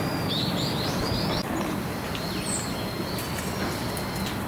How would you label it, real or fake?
real